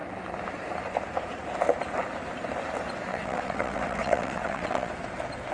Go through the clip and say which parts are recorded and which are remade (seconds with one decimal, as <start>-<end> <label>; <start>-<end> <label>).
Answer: 0.0-3.1 recorded; 3.1-4.9 remade; 4.9-5.5 recorded